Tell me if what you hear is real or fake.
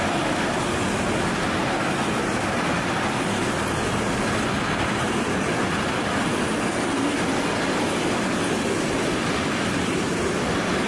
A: real